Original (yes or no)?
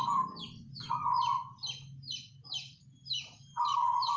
yes